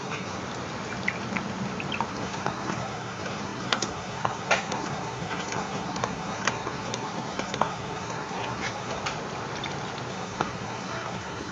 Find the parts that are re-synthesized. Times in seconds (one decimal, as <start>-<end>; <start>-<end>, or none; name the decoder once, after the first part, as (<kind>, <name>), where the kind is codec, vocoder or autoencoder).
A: 0.0-0.4 (codec, SNAC); 2.1-9.0; 10.1-11.5